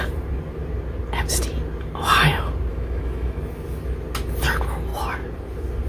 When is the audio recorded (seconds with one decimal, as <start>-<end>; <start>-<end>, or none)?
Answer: 0.0-2.7; 3.4-5.9